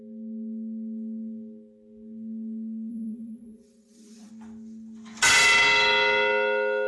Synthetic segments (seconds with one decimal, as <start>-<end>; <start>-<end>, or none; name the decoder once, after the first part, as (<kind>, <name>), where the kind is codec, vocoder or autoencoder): 2.9-4.3 (vocoder, Vocos)